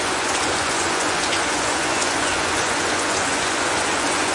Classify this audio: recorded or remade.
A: remade